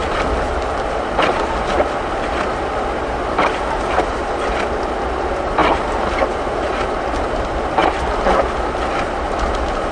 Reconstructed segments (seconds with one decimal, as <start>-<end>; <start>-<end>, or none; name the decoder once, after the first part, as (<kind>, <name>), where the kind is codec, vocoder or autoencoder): none